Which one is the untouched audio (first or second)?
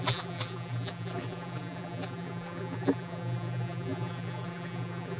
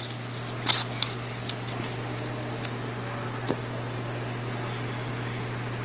second